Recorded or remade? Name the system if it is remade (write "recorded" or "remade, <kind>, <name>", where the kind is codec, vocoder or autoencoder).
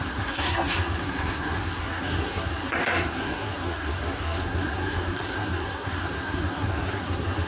remade, codec, SNAC